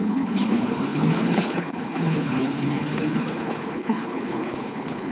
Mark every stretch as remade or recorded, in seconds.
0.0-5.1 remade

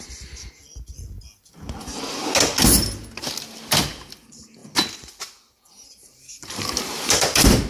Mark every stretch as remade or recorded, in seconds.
0.0-0.6 remade; 0.6-3.9 recorded; 3.9-4.6 remade; 4.6-5.7 recorded; 5.7-7.7 remade

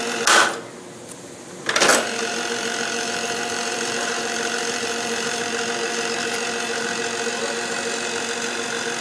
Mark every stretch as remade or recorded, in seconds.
0.0-1.9 recorded; 1.9-5.4 remade; 5.4-9.0 recorded

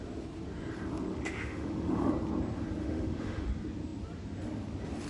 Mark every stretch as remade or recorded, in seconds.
0.0-1.1 recorded; 1.1-2.1 remade; 2.1-2.8 recorded; 2.8-3.5 remade; 3.5-5.1 recorded

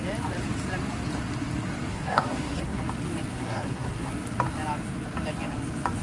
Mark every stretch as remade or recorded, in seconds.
0.0-1.9 recorded; 1.9-2.8 remade; 2.8-3.3 recorded; 3.3-4.1 remade; 4.1-6.0 recorded

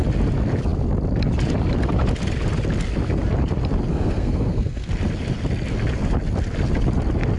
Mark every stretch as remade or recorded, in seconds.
0.0-3.9 recorded; 3.9-4.9 remade; 4.9-7.4 recorded

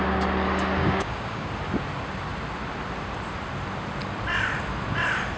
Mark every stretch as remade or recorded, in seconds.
0.0-0.8 recorded; 0.8-1.5 remade; 1.5-5.4 recorded

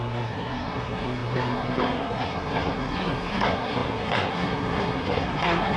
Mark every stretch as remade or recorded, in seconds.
0.0-5.8 remade